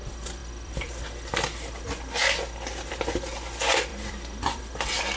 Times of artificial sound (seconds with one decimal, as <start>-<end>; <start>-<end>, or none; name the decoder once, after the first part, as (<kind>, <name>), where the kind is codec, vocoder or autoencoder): 0.4-0.9 (vocoder, BigVGAN v2); 3.9-4.6

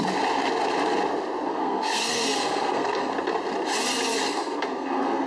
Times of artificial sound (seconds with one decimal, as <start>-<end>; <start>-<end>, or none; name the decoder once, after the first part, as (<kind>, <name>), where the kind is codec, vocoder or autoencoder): 1.5-3.1 (codec, SNAC); 4.3-5.3